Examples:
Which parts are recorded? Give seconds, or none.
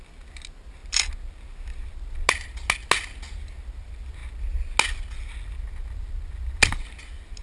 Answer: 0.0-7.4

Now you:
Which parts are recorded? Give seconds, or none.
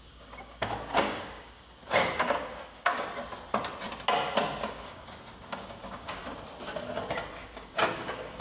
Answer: 3.1-4.7; 6.2-7.4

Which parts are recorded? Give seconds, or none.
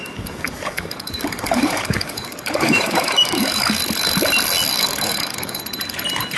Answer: 3.8-4.7; 5.6-6.4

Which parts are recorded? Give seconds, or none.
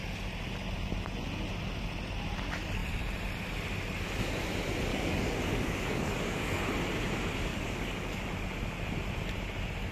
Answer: 0.0-4.9; 6.6-7.5; 8.2-9.9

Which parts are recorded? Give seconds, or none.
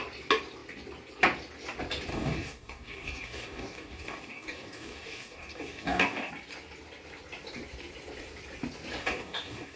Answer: 0.0-2.1; 6.3-9.0